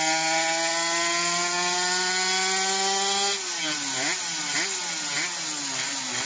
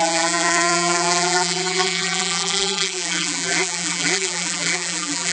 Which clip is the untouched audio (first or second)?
first